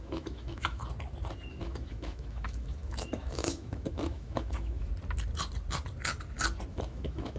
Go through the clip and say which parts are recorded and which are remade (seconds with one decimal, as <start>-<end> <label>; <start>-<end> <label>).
0.0-0.8 remade; 0.8-1.5 recorded; 1.5-4.9 remade; 4.9-6.7 recorded; 6.7-7.4 remade